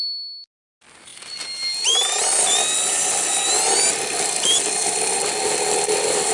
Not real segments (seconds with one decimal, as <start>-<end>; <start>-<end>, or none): none